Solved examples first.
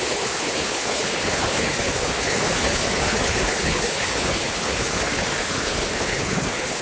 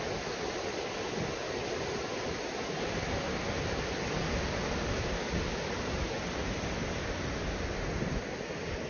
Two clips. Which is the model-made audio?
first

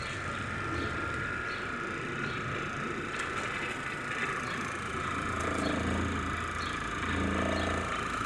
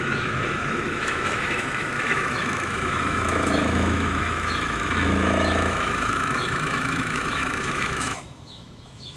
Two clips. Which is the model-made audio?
second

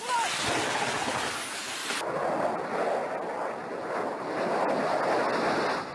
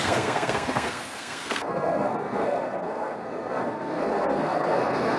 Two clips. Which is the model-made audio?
second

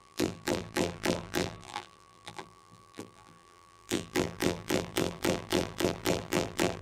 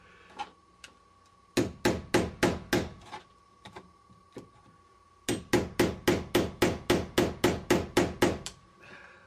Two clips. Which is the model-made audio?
first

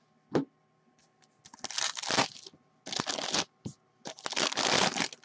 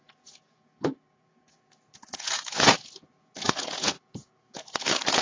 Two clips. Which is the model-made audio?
second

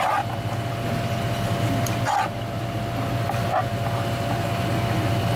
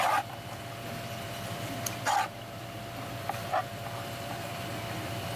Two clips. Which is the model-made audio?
second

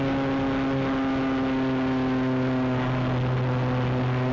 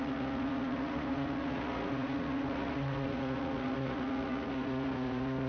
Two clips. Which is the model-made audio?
second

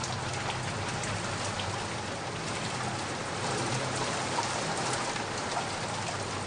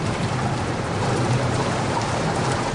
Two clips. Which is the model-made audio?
second